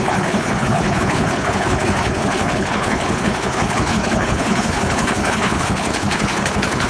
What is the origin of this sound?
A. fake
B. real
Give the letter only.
A